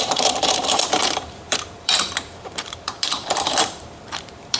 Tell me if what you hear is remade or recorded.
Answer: remade